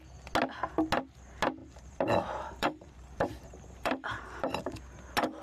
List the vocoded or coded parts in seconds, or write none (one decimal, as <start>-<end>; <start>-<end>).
1.6-4.8